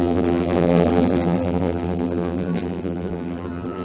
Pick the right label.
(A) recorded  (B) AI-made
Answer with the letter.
B